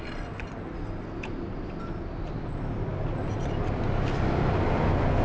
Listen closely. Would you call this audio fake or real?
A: real